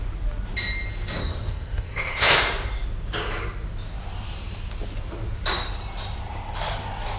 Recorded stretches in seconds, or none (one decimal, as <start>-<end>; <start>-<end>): 0.0-1.2; 2.3-7.2